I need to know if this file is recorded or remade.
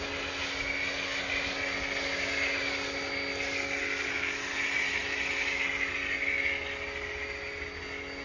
recorded